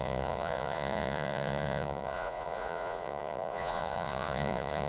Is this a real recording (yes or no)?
no